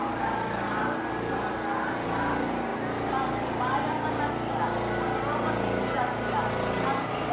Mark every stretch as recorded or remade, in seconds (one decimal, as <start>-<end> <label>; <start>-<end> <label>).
0.0-7.3 recorded